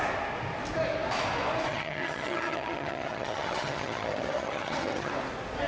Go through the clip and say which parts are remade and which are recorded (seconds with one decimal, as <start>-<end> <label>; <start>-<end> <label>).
0.0-1.7 recorded; 1.7-5.1 remade; 5.1-5.7 recorded